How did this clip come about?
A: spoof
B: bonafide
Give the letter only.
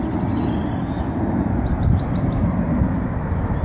B